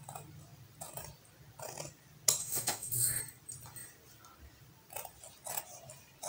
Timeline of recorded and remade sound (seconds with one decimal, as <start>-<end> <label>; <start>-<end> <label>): 0.0-2.4 recorded; 2.4-3.2 remade; 3.2-6.3 recorded